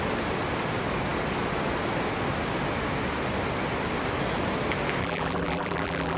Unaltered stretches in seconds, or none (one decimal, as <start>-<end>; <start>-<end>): 0.0-5.0